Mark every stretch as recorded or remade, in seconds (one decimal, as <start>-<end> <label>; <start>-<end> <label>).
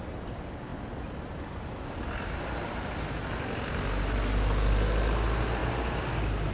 0.0-6.5 recorded